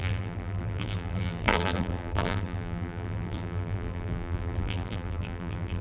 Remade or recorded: remade